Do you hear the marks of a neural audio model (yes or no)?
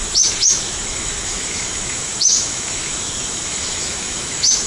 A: yes